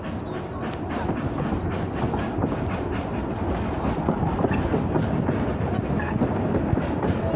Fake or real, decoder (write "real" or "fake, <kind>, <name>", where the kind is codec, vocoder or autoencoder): real